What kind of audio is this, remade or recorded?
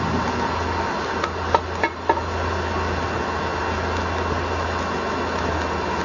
recorded